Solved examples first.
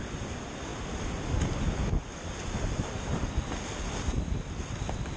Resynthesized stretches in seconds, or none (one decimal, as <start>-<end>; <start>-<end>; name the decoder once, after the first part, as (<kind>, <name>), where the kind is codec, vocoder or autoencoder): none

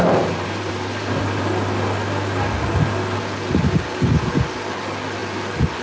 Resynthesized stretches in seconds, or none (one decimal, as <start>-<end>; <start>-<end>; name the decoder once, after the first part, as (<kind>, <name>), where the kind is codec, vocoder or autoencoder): 0.0-1.4 (vocoder, BigVGAN v2)

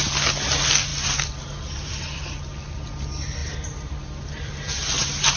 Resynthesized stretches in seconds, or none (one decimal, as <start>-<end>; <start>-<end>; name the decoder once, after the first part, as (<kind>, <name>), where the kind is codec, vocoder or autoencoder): 0.9-2.2 (vocoder, BigVGAN v2); 3.4-5.4

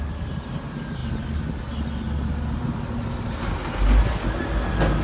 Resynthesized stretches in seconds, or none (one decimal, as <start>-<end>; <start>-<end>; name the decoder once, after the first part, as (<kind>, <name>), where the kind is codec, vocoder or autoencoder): none

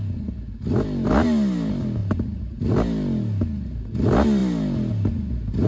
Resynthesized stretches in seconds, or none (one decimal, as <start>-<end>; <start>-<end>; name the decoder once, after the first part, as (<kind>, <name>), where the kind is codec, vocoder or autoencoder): 2.0-2.6 (vocoder, BigVGAN v2)

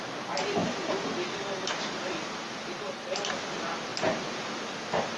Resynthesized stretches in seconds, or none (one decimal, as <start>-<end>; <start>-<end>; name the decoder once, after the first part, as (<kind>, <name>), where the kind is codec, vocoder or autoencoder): 0.6-2.9 (vocoder, BigVGAN v2)

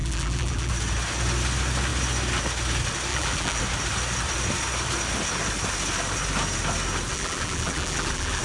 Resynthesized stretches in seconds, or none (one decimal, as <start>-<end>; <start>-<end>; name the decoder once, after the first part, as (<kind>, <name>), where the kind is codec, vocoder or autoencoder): 0.0-0.7 (vocoder, BigVGAN v2); 3.1-3.6; 7.1-8.4

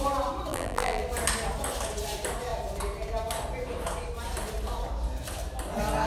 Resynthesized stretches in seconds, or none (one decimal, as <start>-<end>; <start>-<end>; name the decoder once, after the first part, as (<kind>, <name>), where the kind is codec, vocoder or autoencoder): 0.5-1.0 (vocoder, BigVGAN v2)